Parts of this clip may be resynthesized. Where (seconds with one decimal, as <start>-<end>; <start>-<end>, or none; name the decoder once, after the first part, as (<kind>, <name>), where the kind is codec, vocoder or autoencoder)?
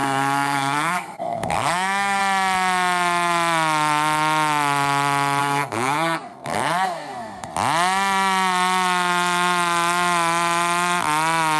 0.0-2.2 (codec, SNAC); 5.4-7.5